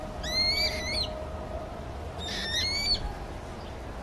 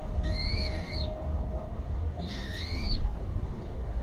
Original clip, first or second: first